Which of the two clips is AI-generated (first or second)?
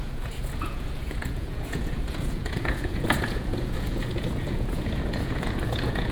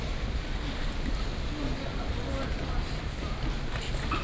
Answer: first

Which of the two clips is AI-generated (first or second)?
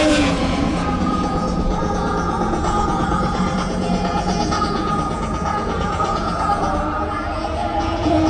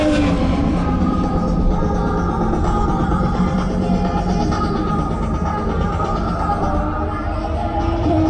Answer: first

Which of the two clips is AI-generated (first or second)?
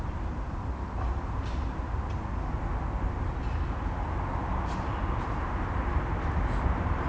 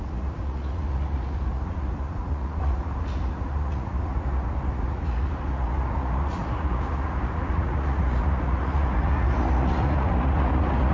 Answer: second